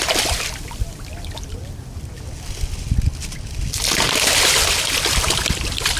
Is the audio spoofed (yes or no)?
no